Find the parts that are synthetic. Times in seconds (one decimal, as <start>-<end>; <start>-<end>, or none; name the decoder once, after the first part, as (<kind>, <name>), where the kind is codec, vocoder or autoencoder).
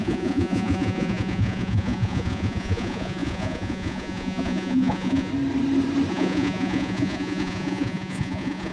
0.0-5.3 (vocoder, Vocos); 6.1-8.7